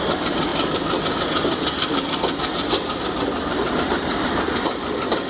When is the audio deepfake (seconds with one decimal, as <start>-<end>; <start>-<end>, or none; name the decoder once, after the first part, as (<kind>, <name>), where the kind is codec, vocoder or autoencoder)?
none